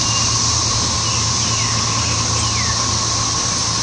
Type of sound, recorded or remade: recorded